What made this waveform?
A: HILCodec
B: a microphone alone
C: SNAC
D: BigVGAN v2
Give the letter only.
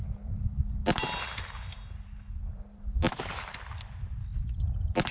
D